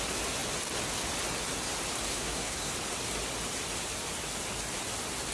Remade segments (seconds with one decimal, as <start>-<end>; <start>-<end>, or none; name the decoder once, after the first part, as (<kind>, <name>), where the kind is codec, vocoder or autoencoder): 2.1-2.7 (codec, SNAC)